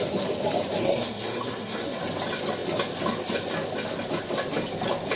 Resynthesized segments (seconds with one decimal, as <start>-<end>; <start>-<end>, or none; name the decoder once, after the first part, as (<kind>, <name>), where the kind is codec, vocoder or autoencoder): 0.8-2.0 (codec, SNAC)